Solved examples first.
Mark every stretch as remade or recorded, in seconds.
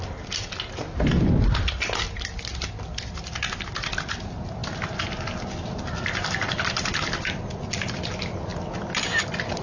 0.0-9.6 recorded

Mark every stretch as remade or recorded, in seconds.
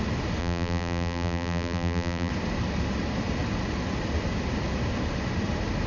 0.0-0.4 recorded; 0.4-2.3 remade; 2.3-5.9 recorded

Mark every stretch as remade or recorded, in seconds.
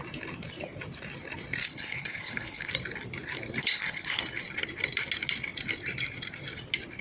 0.0-1.6 recorded; 1.6-2.7 remade; 2.7-3.6 recorded; 3.6-4.2 remade; 4.2-7.0 recorded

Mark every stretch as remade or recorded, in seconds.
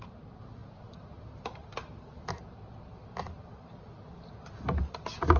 0.0-5.4 recorded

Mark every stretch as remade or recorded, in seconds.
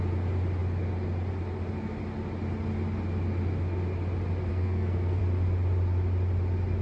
0.0-4.5 recorded; 4.5-5.2 remade; 5.2-6.8 recorded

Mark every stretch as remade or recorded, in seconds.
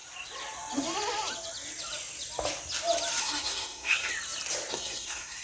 0.0-3.2 recorded; 3.2-4.1 remade; 4.1-4.7 recorded; 4.7-5.4 remade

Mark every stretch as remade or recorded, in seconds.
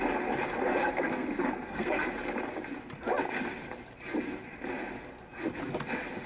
0.0-0.8 recorded; 0.8-2.1 remade; 2.1-6.3 recorded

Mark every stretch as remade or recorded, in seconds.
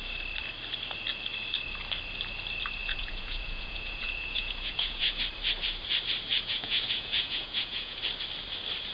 0.0-2.8 recorded; 2.8-5.2 remade; 5.2-6.3 recorded; 6.3-8.0 remade; 8.0-8.9 recorded